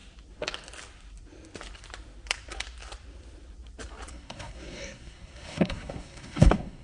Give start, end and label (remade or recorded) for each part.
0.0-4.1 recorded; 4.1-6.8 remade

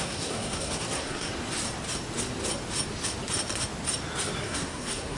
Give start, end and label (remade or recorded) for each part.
0.0-1.3 remade; 1.3-4.4 recorded; 4.4-5.2 remade

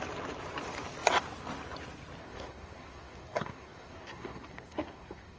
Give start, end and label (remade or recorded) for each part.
0.0-2.2 recorded; 2.2-5.4 remade

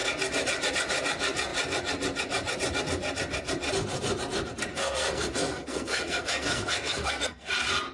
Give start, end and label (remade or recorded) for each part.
0.0-4.7 recorded; 4.7-7.5 remade; 7.5-7.9 recorded

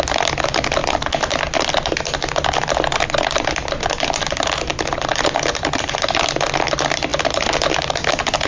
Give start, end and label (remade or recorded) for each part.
0.0-8.5 recorded

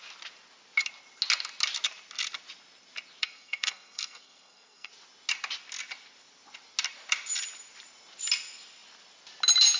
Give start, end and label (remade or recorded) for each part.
0.0-3.2 recorded; 3.2-4.9 remade; 4.9-9.8 recorded